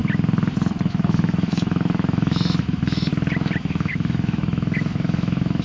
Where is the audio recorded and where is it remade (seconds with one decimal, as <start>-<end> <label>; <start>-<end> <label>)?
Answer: 0.0-0.9 recorded; 0.9-3.1 remade; 3.1-3.6 recorded; 3.6-5.6 remade